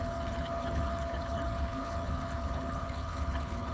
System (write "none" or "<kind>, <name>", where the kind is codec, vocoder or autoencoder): codec, HILCodec